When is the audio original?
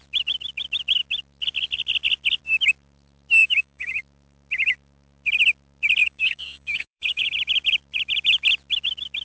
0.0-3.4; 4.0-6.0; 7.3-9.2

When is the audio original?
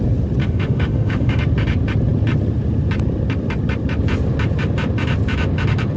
0.0-0.4; 1.4-6.0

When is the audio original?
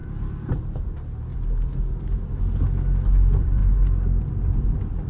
0.0-0.8; 3.6-4.2